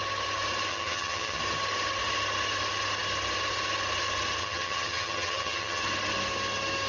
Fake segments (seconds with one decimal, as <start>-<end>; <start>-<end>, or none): 0.7-1.4; 4.4-5.8